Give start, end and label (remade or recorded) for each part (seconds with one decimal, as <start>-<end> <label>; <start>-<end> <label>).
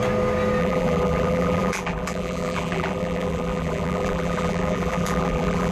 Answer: 0.0-0.6 recorded; 0.6-5.7 remade